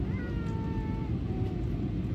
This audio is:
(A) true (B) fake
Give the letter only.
A